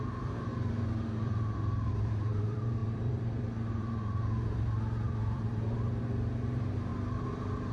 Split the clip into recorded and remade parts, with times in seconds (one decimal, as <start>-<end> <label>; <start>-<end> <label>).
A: 0.0-6.9 remade; 6.9-7.7 recorded

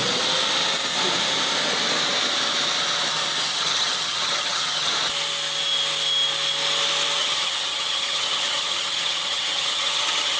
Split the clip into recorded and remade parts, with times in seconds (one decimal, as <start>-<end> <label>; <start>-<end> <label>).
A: 0.0-3.5 recorded; 3.5-4.9 remade; 4.9-7.2 recorded; 7.2-10.4 remade

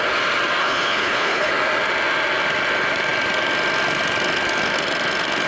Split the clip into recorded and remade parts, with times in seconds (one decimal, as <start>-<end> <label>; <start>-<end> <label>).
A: 0.0-0.6 recorded; 0.6-1.5 remade; 1.5-5.5 recorded

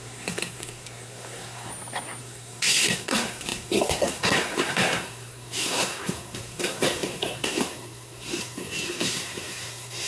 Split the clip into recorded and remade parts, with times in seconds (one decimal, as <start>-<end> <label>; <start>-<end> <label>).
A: 0.0-1.7 remade; 1.7-2.2 recorded; 2.2-10.1 remade

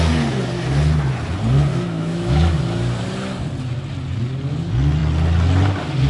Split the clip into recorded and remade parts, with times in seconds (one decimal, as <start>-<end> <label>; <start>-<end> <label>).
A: 0.0-1.7 recorded; 1.7-2.6 remade; 2.6-6.1 recorded

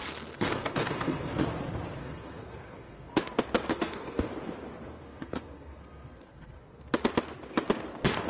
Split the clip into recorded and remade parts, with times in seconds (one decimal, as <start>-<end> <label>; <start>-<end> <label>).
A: 0.0-1.3 remade; 1.3-2.0 recorded; 2.0-3.1 remade; 3.1-3.7 recorded; 3.7-4.3 remade; 4.3-4.8 recorded; 4.8-6.9 remade; 6.9-8.3 recorded

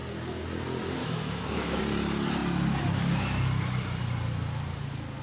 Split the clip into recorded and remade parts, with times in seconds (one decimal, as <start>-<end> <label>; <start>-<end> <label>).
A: 0.0-1.0 recorded; 1.0-1.8 remade; 1.8-5.2 recorded

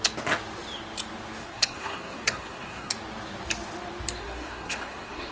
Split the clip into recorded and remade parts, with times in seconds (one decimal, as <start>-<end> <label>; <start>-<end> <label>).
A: 0.0-1.4 recorded; 1.4-2.9 remade; 2.9-4.2 recorded; 4.2-5.3 remade